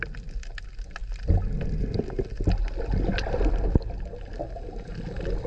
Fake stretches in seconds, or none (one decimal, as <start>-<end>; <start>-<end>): none